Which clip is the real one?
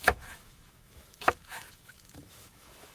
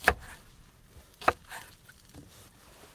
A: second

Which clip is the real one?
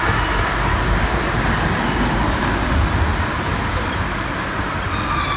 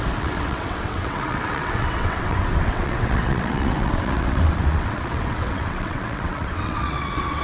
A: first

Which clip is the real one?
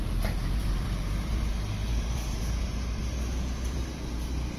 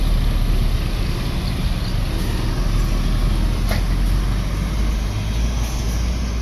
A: second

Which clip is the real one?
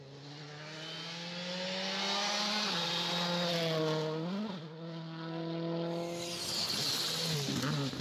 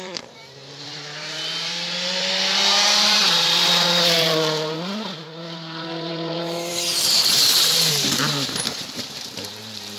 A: first